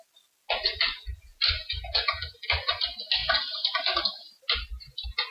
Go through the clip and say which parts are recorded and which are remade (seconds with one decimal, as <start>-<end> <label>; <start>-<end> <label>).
0.0-5.3 recorded